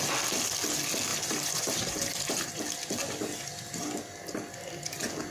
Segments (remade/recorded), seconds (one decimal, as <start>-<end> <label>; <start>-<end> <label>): 0.0-1.1 recorded; 1.1-2.6 remade; 2.6-5.3 recorded